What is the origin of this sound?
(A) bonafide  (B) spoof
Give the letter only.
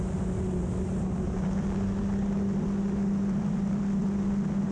A